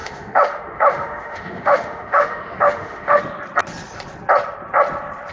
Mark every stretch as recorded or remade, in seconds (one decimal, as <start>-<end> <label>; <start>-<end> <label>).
0.0-3.2 remade; 3.2-5.3 recorded